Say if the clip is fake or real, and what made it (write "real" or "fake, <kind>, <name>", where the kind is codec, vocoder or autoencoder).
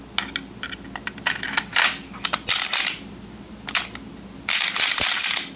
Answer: real